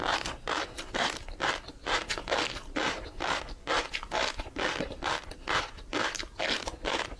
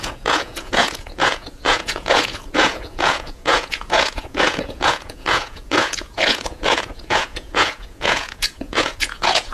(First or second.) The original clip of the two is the first